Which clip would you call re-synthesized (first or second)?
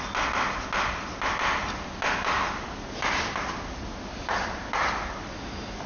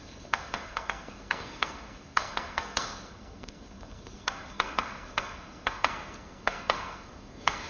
second